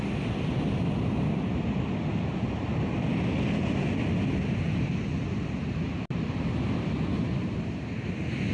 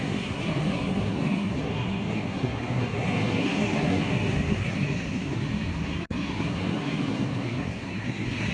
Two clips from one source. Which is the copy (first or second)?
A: second